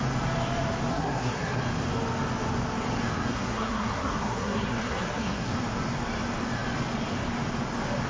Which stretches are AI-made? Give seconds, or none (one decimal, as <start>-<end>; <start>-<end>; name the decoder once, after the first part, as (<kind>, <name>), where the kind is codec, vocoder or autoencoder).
0.9-1.6 (codec, SNAC); 3.3-5.5